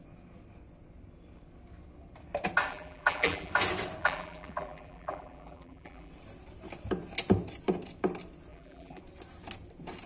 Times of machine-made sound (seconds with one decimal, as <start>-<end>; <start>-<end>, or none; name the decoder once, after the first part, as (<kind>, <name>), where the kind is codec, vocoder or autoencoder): 2.7-3.5 (vocoder, BigVGAN v2); 4.0-6.1; 8.5-9.0

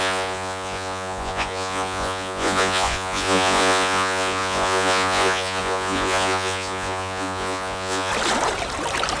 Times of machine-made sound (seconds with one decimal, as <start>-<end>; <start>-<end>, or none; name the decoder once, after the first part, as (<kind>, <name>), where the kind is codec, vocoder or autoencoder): 0.0-8.1 (vocoder, Vocos)

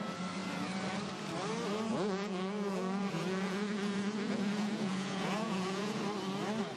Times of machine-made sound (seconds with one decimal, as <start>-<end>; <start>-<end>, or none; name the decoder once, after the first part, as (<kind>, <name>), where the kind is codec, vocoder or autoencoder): 1.9-6.0 (vocoder, Vocos)

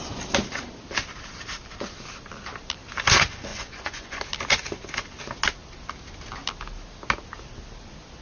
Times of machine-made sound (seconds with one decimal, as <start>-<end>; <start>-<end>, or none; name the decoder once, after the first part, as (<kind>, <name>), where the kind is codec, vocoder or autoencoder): 3.5-4.2 (vocoder, Vocos)

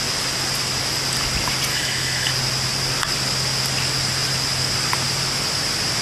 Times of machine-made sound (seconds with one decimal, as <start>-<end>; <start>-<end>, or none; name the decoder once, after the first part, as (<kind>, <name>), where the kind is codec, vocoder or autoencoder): 1.7-2.3 (autoencoder, DAC-VAE)

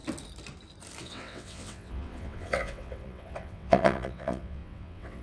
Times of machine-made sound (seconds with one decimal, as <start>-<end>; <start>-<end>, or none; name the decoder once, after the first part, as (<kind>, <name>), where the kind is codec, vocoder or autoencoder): 1.0-5.2 (vocoder, WaveNeXt)